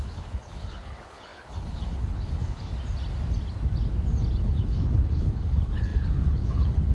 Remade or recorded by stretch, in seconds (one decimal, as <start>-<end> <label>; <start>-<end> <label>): 0.0-2.7 remade; 2.7-4.4 recorded; 4.4-6.9 remade